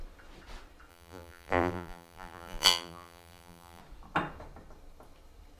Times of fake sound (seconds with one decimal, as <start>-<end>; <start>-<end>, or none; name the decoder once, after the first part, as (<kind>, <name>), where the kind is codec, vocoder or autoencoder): 0.9-3.8 (vocoder, BigVGAN v2)